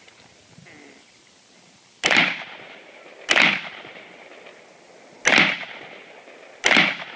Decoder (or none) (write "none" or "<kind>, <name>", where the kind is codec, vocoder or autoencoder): none